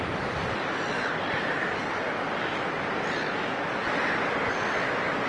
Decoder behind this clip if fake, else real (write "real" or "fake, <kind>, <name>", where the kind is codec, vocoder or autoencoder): real